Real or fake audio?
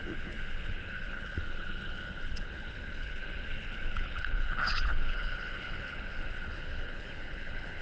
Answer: fake